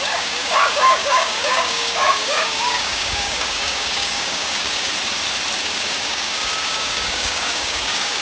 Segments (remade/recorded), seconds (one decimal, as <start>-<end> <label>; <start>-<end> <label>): 0.0-4.9 remade; 4.9-5.6 recorded; 5.6-8.2 remade